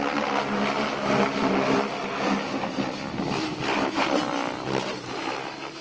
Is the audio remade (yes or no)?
no